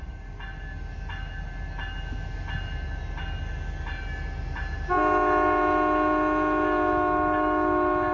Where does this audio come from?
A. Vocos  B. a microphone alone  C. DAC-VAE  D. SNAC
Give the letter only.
B